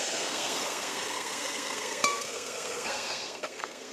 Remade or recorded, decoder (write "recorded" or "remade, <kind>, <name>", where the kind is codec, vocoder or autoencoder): remade, codec, SNAC